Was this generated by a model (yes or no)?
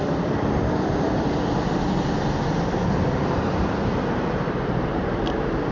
yes